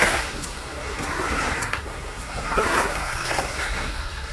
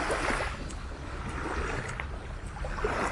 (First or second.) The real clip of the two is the second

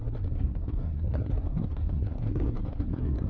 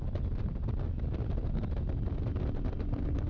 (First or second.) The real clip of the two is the second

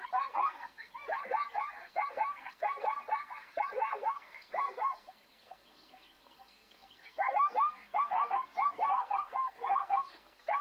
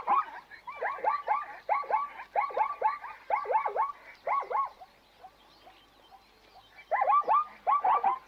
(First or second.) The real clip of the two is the second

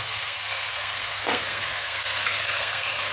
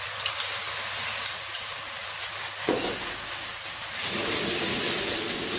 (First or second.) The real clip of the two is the second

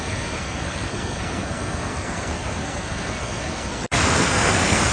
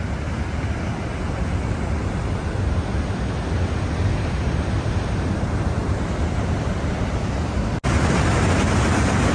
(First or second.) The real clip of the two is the second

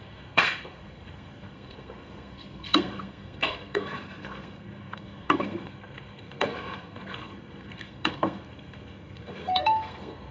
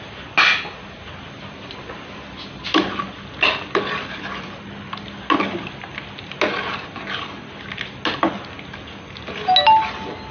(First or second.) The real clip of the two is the second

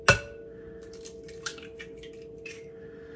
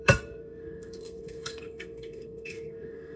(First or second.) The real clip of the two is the first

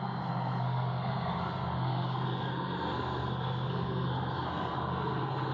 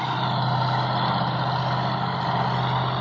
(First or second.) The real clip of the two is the second